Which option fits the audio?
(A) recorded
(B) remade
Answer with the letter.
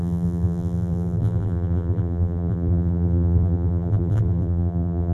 B